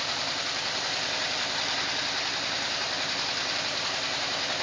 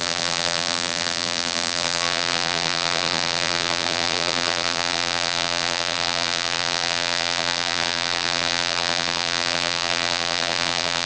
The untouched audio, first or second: first